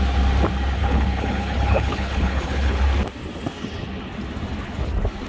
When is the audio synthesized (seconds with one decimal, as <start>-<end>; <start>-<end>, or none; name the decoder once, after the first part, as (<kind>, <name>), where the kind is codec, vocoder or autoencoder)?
0.8-2.8 (codec, HILCodec)